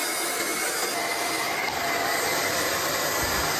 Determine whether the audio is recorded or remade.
recorded